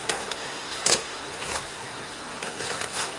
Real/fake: fake